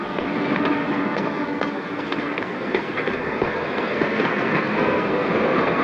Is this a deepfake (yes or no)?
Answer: yes